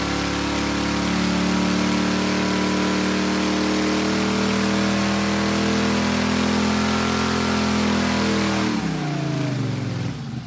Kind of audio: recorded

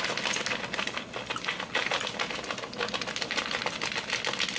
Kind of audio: recorded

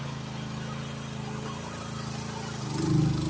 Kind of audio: recorded